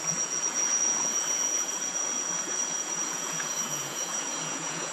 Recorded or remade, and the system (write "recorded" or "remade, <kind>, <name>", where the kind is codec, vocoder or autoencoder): remade, vocoder, Vocos